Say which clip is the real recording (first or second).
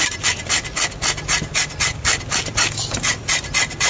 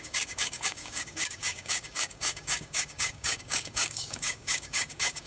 first